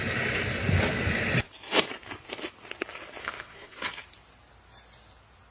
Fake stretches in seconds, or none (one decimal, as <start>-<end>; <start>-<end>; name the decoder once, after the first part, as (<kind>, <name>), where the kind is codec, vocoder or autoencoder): 3.2-3.8 (codec, SNAC)

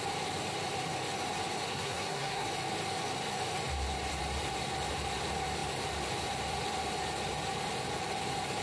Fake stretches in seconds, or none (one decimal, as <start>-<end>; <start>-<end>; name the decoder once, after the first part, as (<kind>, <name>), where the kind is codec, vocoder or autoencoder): 1.7-2.5 (codec, SNAC)

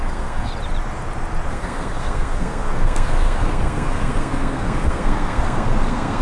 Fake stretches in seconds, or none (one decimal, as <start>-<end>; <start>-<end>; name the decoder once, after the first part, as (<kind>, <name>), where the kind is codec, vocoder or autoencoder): 0.0-0.5 (codec, SNAC); 1.5-6.2